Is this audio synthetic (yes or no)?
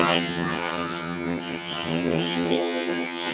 yes